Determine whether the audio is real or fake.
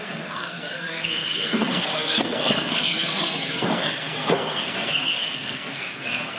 fake